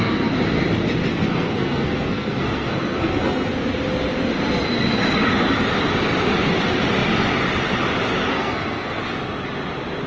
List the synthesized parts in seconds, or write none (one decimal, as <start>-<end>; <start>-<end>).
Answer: 1.1-3.5; 8.3-9.0